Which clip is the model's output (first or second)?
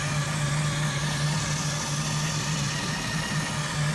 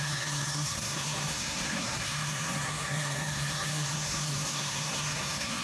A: second